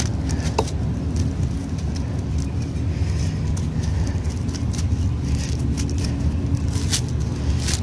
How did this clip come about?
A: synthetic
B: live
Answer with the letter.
B